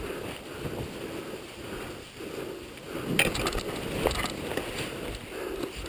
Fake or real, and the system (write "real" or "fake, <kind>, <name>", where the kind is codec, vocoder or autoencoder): real